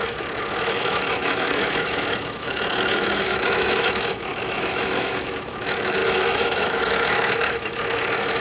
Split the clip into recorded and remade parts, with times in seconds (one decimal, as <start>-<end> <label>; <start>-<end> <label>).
0.0-8.4 remade

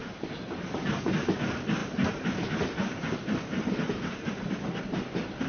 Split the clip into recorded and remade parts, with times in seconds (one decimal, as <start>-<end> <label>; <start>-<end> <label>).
0.0-5.5 recorded

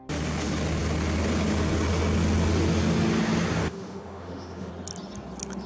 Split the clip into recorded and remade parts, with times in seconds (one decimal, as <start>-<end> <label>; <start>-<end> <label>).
0.0-3.6 recorded; 3.6-4.7 remade; 4.7-5.7 recorded

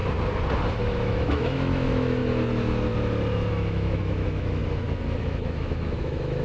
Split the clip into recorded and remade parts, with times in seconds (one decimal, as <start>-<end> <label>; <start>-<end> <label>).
0.0-0.8 recorded; 0.8-2.2 remade; 2.2-3.5 recorded; 3.5-4.6 remade; 4.6-5.2 recorded; 5.2-6.4 remade

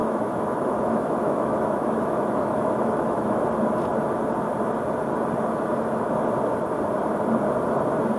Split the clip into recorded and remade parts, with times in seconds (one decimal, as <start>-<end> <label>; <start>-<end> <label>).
0.0-3.4 remade; 3.4-8.2 recorded

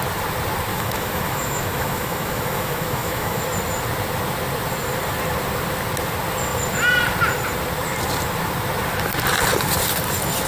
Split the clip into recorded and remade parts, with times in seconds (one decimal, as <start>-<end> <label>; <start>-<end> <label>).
0.0-0.7 recorded; 0.7-3.4 remade; 3.4-10.5 recorded